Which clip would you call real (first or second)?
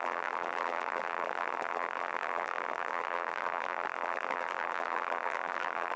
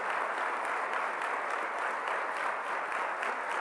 second